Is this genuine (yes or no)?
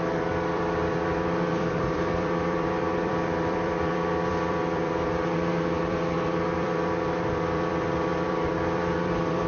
no